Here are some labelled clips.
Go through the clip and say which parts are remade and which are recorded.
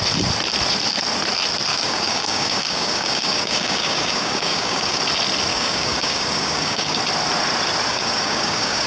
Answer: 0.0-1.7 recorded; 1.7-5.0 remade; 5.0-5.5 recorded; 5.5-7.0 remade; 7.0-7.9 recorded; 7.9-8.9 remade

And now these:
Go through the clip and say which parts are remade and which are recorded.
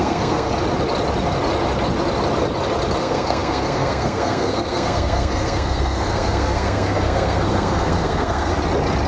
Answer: 0.0-0.5 remade; 0.5-3.0 recorded; 3.0-8.5 remade; 8.5-9.1 recorded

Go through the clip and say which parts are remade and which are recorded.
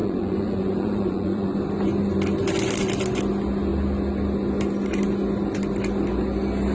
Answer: 0.0-1.6 remade; 1.6-6.7 recorded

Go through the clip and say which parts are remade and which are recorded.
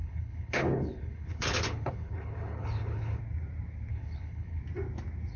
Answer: 0.0-3.2 remade; 3.2-3.9 recorded; 3.9-4.6 remade; 4.6-5.4 recorded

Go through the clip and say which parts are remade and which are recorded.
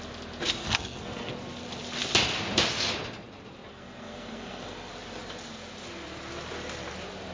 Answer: 0.0-0.6 recorded; 0.6-1.3 remade; 1.3-3.7 recorded; 3.7-4.9 remade; 4.9-7.3 recorded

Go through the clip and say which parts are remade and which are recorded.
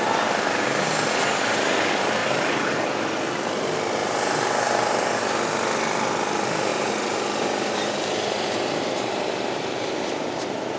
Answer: 0.0-2.2 recorded; 2.2-2.8 remade; 2.8-4.0 recorded; 4.0-5.2 remade; 5.2-6.7 recorded; 6.7-10.4 remade; 10.4-10.8 recorded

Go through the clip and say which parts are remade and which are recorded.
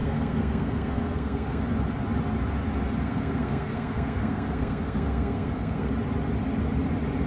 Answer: 0.0-1.6 remade; 1.6-3.0 recorded; 3.0-5.9 remade; 5.9-7.3 recorded